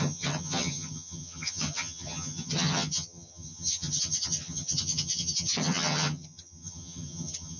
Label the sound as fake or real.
fake